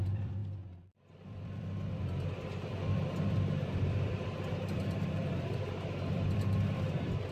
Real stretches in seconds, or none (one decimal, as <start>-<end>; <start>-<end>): 0.4-1.1